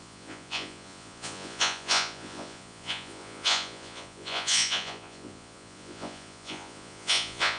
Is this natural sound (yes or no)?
no